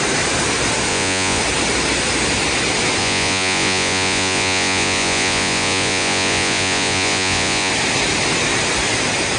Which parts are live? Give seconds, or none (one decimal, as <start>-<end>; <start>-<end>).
0.0-0.9; 1.4-3.0; 7.7-9.4

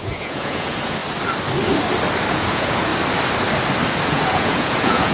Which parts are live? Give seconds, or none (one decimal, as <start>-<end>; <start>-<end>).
1.0-2.3; 2.9-4.1